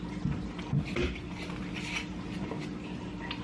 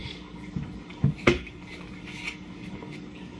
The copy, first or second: second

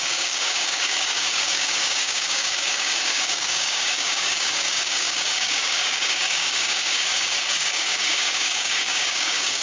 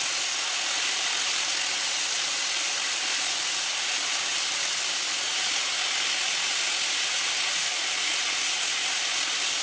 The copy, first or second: first